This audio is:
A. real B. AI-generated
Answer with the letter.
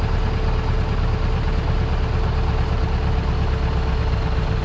A